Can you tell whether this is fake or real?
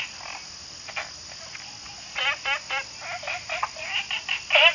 real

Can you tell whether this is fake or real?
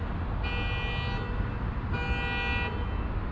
real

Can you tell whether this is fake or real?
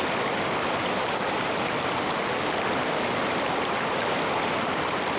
real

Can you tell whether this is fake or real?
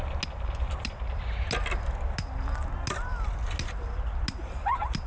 real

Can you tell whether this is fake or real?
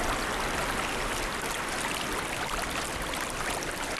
real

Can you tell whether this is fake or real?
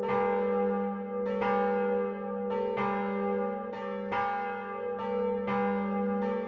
real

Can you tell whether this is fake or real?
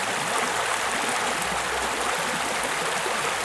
real